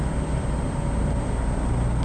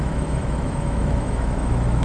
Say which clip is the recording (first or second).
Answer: first